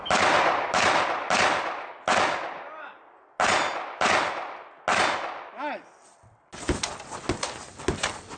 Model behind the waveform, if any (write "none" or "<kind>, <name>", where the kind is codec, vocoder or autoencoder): none